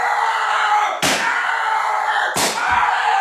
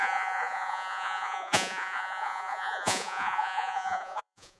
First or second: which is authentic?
first